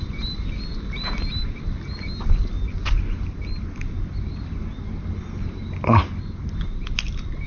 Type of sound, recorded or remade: recorded